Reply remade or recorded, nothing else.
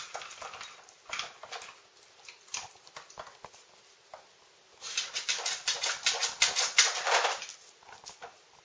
recorded